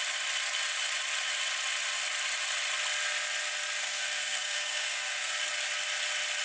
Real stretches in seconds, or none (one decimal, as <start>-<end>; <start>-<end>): 0.0-3.8; 5.4-6.4